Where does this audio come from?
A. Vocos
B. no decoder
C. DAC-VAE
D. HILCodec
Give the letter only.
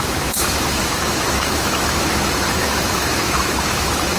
C